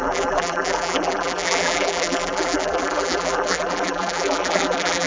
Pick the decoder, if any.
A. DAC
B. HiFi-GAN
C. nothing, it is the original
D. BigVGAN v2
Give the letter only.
D